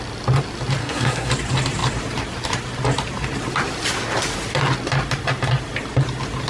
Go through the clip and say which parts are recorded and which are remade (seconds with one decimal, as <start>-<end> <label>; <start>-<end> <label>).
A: 0.0-0.8 recorded; 0.8-1.3 remade; 1.3-6.5 recorded